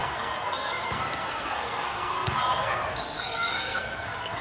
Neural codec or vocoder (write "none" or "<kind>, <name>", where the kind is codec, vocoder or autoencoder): codec, SNAC